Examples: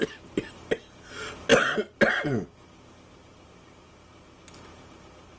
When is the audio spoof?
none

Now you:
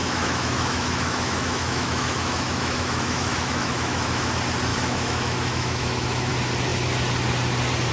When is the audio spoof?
0.0-4.3 (autoencoder, DAC-VAE); 4.7-6.3

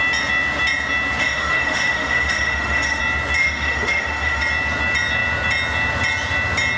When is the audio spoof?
1.2-3.0 (autoencoder, DAC-VAE); 3.4-4.4

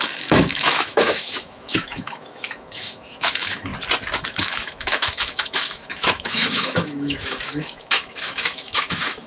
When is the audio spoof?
0.0-3.7 (autoencoder, DAC-VAE); 4.2-9.3